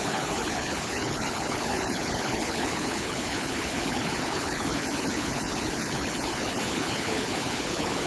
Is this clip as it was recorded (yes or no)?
no